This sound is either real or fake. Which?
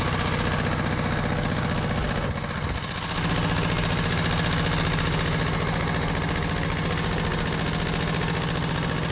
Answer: real